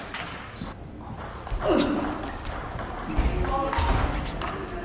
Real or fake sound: real